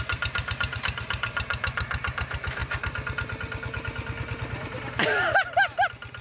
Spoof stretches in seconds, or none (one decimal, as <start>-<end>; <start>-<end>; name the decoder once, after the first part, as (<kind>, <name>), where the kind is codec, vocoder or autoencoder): none